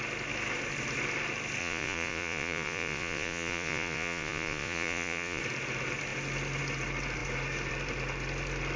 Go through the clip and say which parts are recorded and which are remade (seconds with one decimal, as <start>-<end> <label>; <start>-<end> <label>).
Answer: 0.0-1.6 recorded; 1.6-5.4 remade; 5.4-8.8 recorded

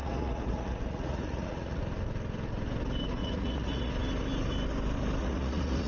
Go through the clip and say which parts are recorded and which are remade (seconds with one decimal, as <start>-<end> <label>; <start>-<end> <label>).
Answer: 0.0-1.8 remade; 1.8-3.2 recorded; 3.2-3.9 remade; 3.9-5.2 recorded; 5.2-5.9 remade

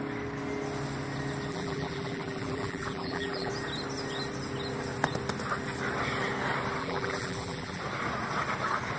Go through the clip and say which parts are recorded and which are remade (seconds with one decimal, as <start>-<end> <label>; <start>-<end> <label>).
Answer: 0.0-1.5 recorded; 1.5-3.5 remade; 3.5-6.8 recorded; 6.8-7.8 remade; 7.8-9.0 recorded

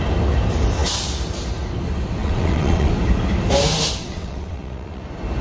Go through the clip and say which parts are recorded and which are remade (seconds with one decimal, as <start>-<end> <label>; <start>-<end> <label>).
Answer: 0.0-2.2 recorded; 2.2-2.9 remade; 2.9-4.0 recorded; 4.0-5.0 remade; 5.0-5.4 recorded

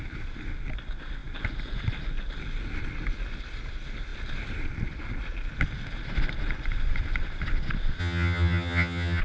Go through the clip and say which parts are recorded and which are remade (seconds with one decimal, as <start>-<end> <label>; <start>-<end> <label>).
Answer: 0.0-8.0 recorded; 8.0-9.2 remade